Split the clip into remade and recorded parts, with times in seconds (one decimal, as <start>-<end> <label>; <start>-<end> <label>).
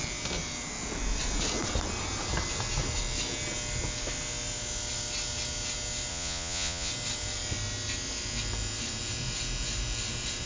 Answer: 0.0-6.1 recorded; 6.1-6.9 remade; 6.9-10.5 recorded